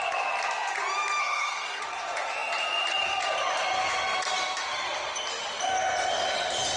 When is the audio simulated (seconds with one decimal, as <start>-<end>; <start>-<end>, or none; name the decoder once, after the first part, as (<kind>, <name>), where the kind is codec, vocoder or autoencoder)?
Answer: 1.2-1.8 (codec, SNAC)